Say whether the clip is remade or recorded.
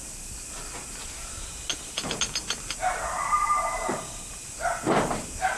recorded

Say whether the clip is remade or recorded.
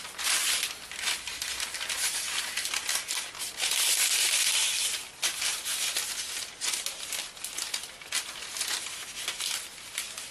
recorded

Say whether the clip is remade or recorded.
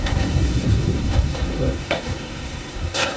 remade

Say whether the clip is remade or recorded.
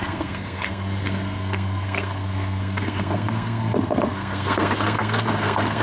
remade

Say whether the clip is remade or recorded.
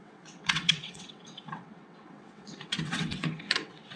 remade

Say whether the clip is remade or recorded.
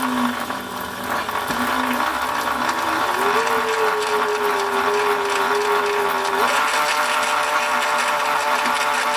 recorded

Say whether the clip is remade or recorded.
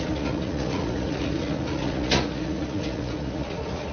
remade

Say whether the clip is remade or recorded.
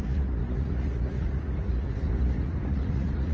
remade